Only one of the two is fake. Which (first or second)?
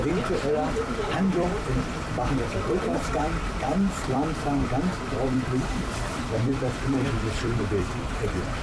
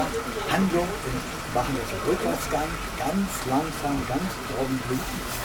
first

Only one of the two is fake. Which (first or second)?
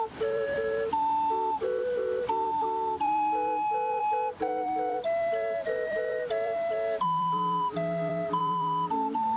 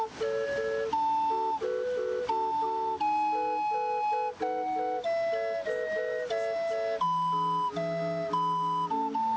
first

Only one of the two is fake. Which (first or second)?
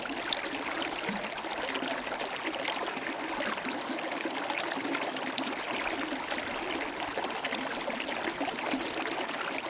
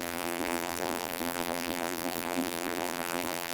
second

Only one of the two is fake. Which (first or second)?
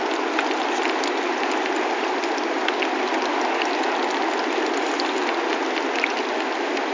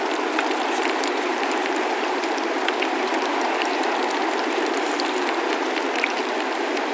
second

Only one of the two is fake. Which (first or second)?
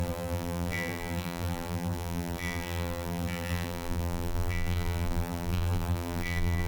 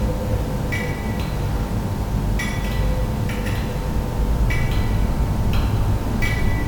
first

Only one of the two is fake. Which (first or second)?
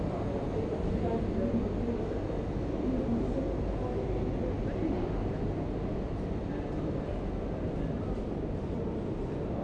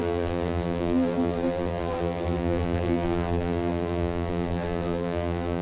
second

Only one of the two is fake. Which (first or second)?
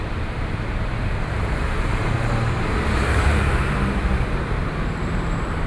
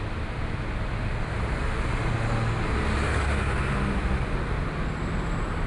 first